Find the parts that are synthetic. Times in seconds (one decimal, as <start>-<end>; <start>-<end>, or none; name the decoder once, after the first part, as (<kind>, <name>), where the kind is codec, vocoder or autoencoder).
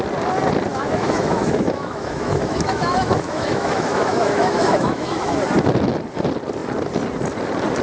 0.7-5.4 (autoencoder, DAC-VAE)